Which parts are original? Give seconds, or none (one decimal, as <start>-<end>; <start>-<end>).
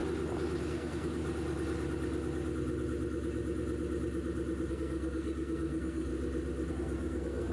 0.0-0.6; 1.2-4.7; 6.1-6.7